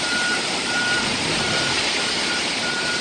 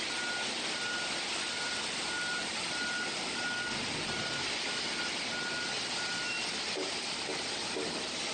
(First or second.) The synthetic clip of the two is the first